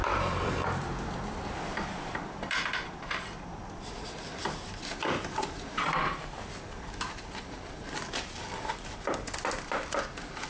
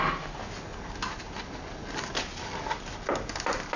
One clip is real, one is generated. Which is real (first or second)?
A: second